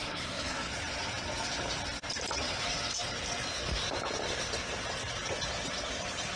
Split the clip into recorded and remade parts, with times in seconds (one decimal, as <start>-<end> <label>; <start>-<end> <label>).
0.0-0.7 remade; 0.7-6.4 recorded

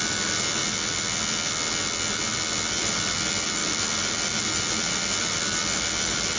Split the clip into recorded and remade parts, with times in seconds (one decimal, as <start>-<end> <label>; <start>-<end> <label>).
0.0-0.6 remade; 0.6-2.7 recorded; 2.7-6.4 remade

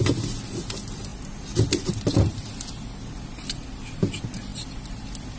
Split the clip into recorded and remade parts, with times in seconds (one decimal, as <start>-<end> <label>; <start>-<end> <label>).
0.0-5.4 recorded

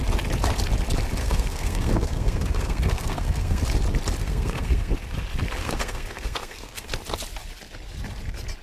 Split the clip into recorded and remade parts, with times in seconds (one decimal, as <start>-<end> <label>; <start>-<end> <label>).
0.0-1.2 recorded; 1.2-3.6 remade; 3.6-4.2 recorded; 4.2-4.9 remade; 4.9-5.6 recorded; 5.6-6.9 remade; 6.9-8.6 recorded